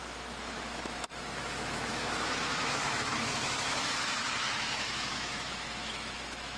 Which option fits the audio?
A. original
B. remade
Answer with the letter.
B